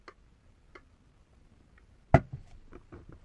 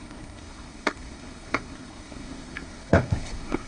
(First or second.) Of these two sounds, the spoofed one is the second